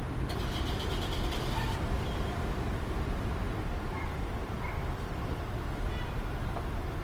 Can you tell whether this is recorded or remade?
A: remade